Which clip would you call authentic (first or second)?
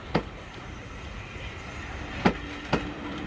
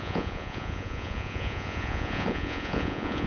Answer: first